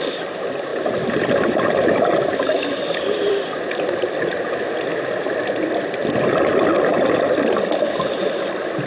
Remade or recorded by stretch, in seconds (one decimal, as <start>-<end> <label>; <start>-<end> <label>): 0.0-0.7 recorded; 0.7-4.3 remade; 4.3-6.0 recorded; 6.0-7.7 remade; 7.7-8.9 recorded